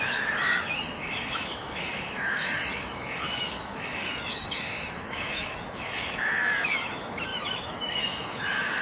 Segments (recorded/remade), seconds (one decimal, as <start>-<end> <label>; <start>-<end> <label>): 0.0-8.8 remade